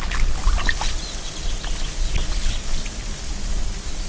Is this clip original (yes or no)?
yes